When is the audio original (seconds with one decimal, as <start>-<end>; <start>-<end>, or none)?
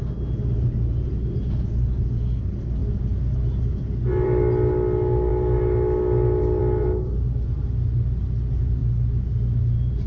0.0-10.1